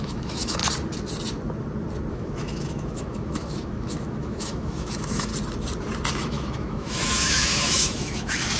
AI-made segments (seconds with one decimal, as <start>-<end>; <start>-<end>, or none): 0.0-0.6; 2.1-5.3; 6.1-8.6